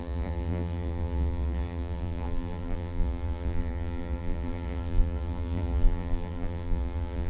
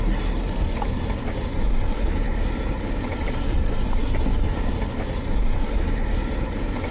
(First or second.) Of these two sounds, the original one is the second